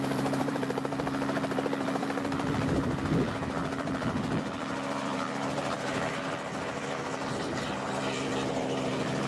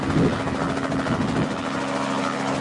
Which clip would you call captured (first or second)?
second